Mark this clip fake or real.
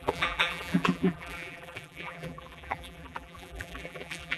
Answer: fake